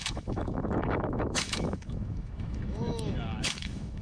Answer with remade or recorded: remade